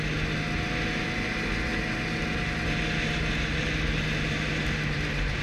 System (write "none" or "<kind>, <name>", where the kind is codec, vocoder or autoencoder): none